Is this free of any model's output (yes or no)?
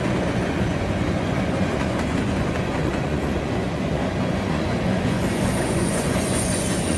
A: no